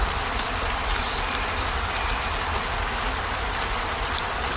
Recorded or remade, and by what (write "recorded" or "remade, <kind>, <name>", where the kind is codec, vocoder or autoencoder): remade, vocoder, BigVGAN v2